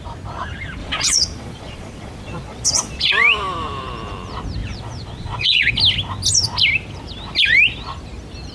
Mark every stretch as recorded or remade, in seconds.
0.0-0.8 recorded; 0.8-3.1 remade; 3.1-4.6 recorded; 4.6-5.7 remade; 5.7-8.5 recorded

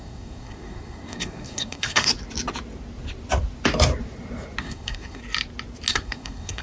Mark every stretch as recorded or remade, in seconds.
0.0-2.1 remade; 2.1-4.6 recorded; 4.6-5.2 remade; 5.2-5.9 recorded; 5.9-6.6 remade

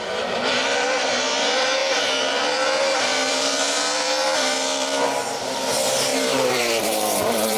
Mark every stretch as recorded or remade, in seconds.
0.0-0.6 remade; 0.6-1.4 recorded; 1.4-7.6 remade

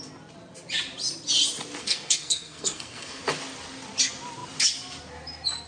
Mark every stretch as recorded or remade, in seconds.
0.0-1.8 recorded; 1.8-3.2 remade; 3.2-5.7 recorded

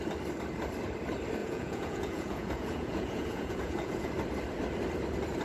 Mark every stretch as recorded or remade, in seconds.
0.0-1.4 recorded; 1.4-4.1 remade; 4.1-5.4 recorded